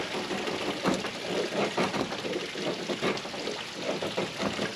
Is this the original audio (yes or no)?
yes